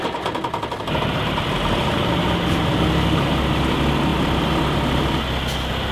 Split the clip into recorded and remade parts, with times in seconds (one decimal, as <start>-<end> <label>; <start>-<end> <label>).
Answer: 0.0-5.9 recorded